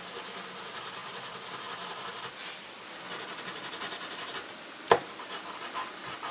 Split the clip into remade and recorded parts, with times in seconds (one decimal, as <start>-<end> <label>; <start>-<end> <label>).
0.0-6.3 recorded